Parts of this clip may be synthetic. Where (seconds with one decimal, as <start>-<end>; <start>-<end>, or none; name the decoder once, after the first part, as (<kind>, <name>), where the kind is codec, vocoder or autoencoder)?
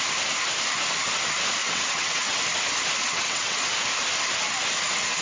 1.6-2.4 (vocoder, WaveNeXt); 3.0-3.6